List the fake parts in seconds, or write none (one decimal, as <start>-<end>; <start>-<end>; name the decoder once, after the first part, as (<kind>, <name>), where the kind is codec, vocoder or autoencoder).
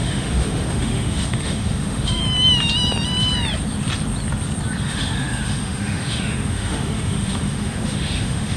0.0-2.2 (autoencoder, DAC-VAE); 4.8-8.6